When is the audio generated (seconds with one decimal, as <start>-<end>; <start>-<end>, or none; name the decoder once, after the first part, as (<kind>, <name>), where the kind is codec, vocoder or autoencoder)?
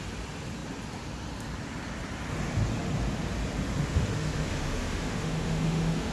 3.8-6.1 (autoencoder, DAC-VAE)